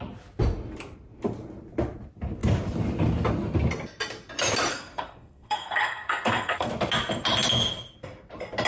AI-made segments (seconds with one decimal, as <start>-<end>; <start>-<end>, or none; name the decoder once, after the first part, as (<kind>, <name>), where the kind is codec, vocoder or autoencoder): 4.7-6.7 (codec, SNAC)